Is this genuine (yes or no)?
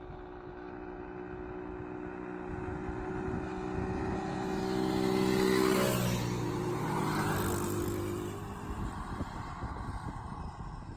yes